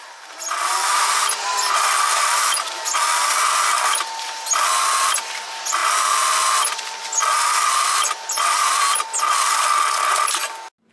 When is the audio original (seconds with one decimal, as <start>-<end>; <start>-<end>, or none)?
0.0-10.9